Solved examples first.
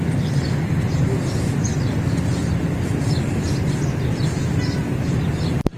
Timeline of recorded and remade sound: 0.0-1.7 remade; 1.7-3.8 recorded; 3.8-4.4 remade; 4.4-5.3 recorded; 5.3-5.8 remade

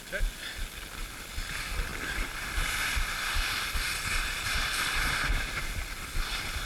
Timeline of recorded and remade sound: 0.0-1.9 recorded; 1.9-5.9 remade; 5.9-6.7 recorded

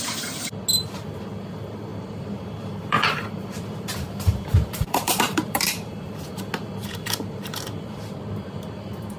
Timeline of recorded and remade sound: 0.0-1.9 recorded; 1.9-6.5 remade; 6.5-6.9 recorded; 6.9-8.0 remade; 8.0-9.2 recorded

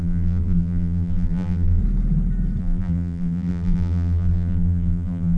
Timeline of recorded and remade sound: 0.0-1.8 remade; 1.8-2.6 recorded; 2.6-5.4 remade

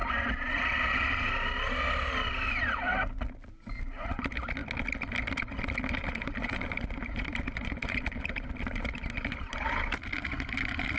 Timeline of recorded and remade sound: 0.0-6.0 recorded; 6.0-9.7 remade; 9.7-11.0 recorded